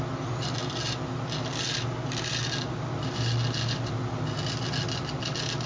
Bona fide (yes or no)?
yes